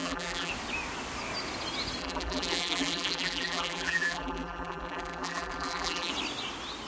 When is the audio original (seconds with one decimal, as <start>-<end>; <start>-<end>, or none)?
0.5-2.0; 6.1-6.9

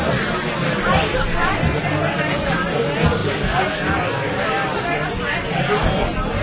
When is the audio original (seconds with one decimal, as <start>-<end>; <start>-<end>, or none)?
0.0-6.4

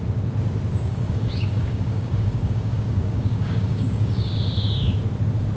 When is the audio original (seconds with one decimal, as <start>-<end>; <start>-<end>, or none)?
0.0-0.9; 4.3-5.6

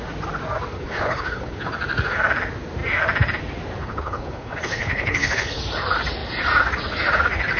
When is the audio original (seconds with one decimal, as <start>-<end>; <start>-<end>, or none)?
0.0-0.7; 1.7-3.8; 5.6-7.6

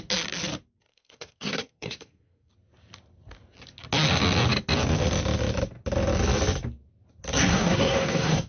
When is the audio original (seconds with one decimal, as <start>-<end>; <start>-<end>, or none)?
0.0-0.9; 2.5-7.5

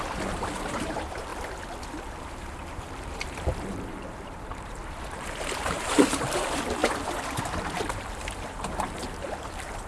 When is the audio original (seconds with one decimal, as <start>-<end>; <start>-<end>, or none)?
1.3-2.0; 6.8-7.4

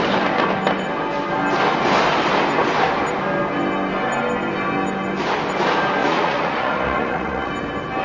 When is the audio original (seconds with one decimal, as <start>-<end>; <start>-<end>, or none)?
0.0-6.0; 7.5-8.0